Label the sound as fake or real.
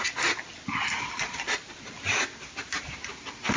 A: real